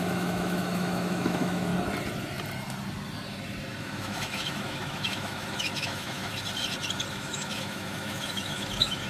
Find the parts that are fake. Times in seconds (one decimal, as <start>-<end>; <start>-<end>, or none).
0.0-1.7; 3.8-6.3; 7.1-9.1